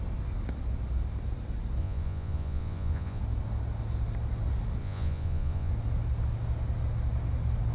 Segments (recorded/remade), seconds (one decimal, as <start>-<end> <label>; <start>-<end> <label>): 0.0-1.8 recorded; 1.8-3.2 remade; 3.2-4.8 recorded; 4.8-5.7 remade; 5.7-7.7 recorded